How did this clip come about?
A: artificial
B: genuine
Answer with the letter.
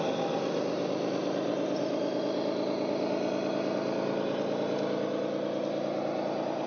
B